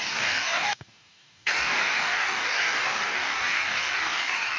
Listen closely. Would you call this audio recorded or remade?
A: remade